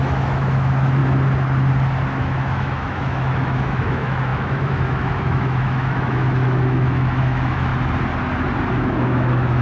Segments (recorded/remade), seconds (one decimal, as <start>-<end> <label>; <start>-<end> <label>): 0.0-1.0 remade; 1.0-2.2 recorded; 2.2-7.7 remade; 7.7-8.7 recorded; 8.7-9.6 remade